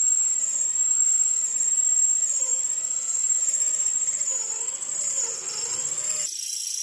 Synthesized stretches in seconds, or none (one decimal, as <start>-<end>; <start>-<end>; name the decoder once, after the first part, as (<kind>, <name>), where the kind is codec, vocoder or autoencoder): 0.0-3.9 (vocoder, Vocos)

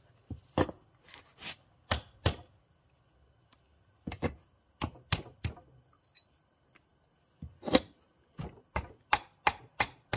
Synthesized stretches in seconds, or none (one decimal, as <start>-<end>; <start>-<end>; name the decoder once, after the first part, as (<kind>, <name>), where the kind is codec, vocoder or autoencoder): none

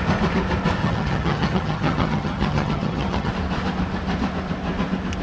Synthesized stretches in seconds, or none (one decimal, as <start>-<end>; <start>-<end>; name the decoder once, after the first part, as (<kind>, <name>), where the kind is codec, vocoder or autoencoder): 0.8-3.3 (vocoder, HiFi-GAN)

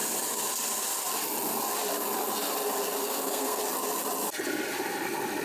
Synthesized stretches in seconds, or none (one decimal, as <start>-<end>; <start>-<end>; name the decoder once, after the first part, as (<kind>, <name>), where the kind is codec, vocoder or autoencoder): 3.0-3.6 (codec, SNAC)

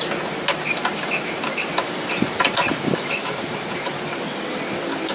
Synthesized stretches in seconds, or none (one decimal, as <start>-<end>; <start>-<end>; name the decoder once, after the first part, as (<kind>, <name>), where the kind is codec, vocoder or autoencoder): 0.9-3.9 (vocoder, BigVGAN v2)

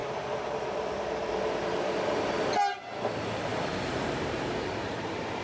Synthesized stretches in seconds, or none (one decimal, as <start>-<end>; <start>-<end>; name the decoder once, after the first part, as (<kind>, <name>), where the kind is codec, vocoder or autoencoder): 0.0-1.3 (vocoder, BigVGAN v2); 3.5-5.4